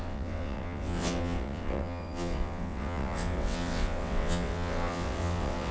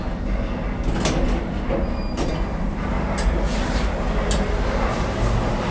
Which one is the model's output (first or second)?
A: first